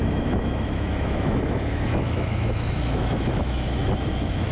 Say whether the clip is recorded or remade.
remade